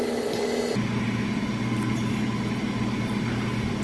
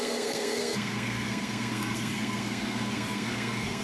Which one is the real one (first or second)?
first